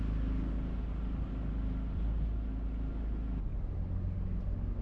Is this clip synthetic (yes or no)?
no